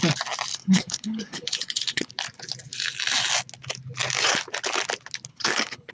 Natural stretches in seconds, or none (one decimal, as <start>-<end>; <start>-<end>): 0.0-0.5; 2.1-5.3